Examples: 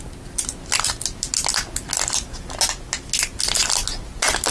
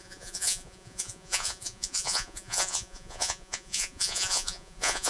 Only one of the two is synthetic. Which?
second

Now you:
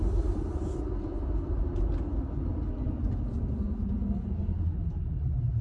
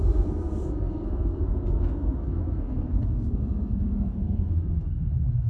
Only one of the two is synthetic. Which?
second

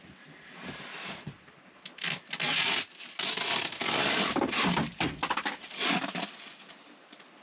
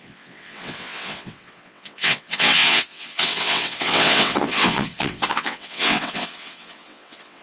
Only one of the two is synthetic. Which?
second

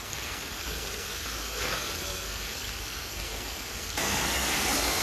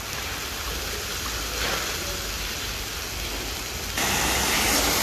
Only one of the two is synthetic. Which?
first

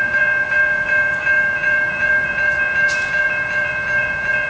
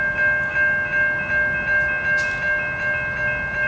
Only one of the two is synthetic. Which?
first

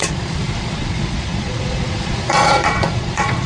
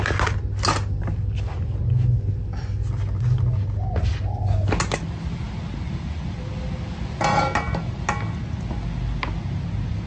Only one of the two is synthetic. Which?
first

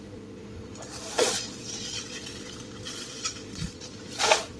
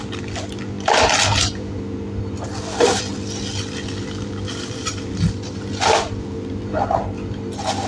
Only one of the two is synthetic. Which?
first